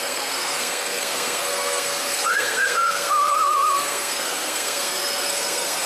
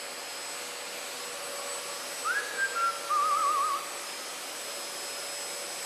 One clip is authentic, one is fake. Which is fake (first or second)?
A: first